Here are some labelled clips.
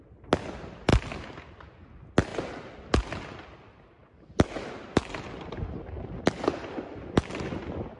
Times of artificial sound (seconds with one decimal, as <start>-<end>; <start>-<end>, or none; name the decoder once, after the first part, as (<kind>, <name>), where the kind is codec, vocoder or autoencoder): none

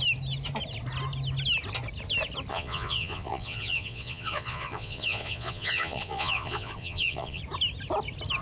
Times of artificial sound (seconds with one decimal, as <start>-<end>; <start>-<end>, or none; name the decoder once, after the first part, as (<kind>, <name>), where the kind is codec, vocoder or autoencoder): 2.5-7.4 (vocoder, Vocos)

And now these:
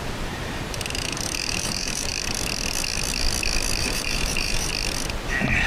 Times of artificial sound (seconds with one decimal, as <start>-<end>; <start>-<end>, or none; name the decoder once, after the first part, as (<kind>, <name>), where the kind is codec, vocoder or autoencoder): 0.0-2.1 (vocoder, BigVGAN v2); 3.8-4.7

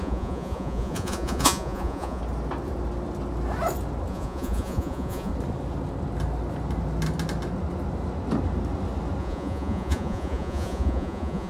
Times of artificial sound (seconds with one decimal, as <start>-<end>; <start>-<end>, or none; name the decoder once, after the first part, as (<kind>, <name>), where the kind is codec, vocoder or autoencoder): 0.0-2.2 (vocoder, Vocos); 4.1-5.3; 9.2-11.5